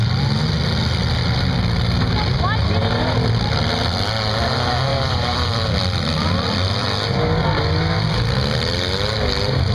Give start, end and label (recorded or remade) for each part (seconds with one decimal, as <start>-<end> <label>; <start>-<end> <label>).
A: 0.0-4.9 recorded; 4.9-5.7 remade; 5.7-9.7 recorded